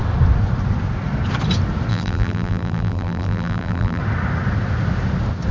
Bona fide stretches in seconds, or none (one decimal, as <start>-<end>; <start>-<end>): 0.0-1.9; 4.0-5.5